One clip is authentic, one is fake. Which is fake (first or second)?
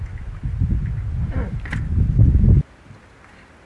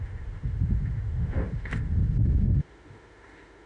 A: second